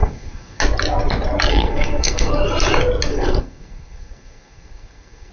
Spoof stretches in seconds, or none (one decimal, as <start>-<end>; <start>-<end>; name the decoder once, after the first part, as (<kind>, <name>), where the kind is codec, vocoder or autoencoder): 0.0-0.6 (codec, SNAC); 1.5-2.3; 3.1-5.3